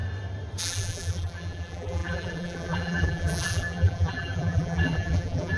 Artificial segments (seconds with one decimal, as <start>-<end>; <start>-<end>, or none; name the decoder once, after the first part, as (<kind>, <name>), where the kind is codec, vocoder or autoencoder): 0.6-5.6 (vocoder, BigVGAN v2)